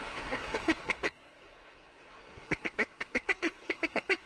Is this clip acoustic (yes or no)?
no